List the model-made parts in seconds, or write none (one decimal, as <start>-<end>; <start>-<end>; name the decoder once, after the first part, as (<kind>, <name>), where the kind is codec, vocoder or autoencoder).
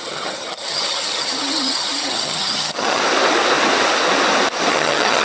0.0-3.0 (vocoder, HiFi-GAN); 4.7-5.2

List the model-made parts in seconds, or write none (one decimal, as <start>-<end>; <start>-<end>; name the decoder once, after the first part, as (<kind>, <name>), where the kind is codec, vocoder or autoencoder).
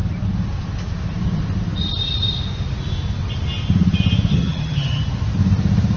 4.3-5.0 (vocoder, HiFi-GAN)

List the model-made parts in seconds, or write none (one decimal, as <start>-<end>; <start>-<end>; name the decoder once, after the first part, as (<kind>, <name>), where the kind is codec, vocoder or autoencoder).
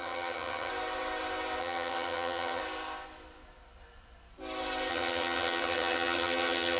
0.0-0.7 (vocoder, HiFi-GAN); 1.6-2.6; 4.9-6.8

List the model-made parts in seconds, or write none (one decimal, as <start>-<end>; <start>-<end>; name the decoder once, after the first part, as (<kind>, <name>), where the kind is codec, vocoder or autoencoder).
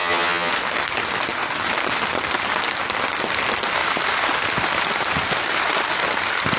0.0-0.5 (vocoder, HiFi-GAN)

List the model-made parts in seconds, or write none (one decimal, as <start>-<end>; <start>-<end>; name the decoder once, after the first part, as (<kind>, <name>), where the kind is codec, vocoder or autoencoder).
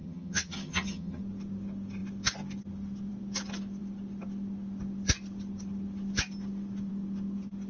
0.0-1.2 (vocoder, HiFi-GAN)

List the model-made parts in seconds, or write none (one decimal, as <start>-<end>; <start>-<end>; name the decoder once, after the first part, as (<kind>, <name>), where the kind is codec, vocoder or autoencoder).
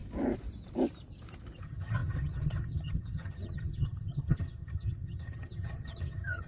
1.6-6.5 (vocoder, HiFi-GAN)